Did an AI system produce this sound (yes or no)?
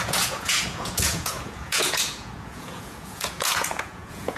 yes